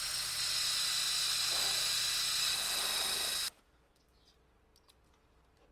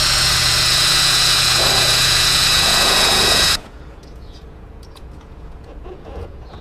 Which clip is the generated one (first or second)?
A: second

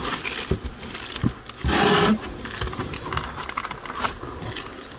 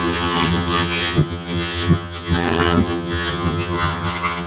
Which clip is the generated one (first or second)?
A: second